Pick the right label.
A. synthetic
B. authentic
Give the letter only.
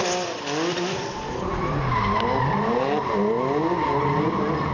B